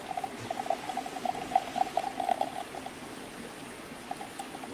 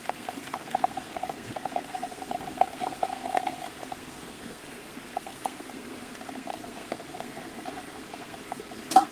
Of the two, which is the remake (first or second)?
second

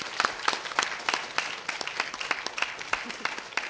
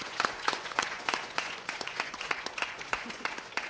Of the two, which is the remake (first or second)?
second